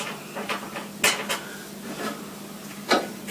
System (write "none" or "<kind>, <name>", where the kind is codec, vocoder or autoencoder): none